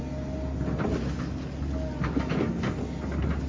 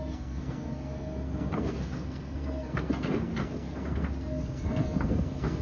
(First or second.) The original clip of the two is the first